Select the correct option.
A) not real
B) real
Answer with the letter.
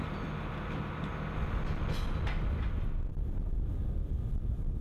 B